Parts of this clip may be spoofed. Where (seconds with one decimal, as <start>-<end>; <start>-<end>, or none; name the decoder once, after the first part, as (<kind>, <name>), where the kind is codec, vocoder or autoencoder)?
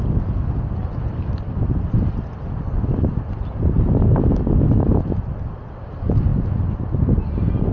none